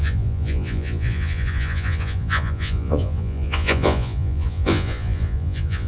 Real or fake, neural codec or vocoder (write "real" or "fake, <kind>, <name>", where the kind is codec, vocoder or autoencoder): fake, vocoder, Vocos